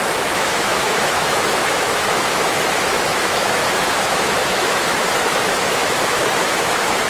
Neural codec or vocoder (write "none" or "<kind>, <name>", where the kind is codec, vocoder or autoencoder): autoencoder, DAC-VAE